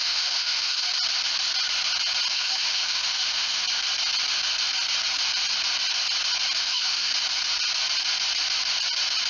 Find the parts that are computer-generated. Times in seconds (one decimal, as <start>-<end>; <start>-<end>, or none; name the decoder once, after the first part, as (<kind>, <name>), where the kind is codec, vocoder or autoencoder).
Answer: 0.0-0.9 (autoencoder, DAC-VAE); 2.3-3.6; 6.6-7.1

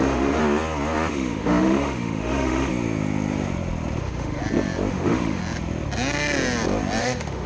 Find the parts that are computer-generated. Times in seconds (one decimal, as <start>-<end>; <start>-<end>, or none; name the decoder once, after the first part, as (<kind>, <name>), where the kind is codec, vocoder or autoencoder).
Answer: 0.0-0.4 (autoencoder, DAC-VAE); 1.1-2.7; 4.0-4.4; 4.9-5.4; 7.0-7.5

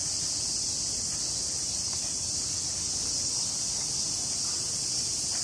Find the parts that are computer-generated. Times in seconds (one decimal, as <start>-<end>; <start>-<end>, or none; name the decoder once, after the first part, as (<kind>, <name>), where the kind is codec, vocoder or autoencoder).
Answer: none